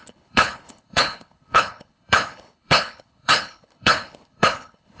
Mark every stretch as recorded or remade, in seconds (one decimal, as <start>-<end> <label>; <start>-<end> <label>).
0.0-5.0 remade

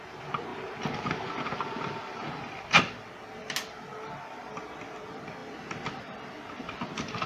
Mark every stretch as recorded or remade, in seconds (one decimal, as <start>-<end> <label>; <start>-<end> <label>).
0.0-7.3 recorded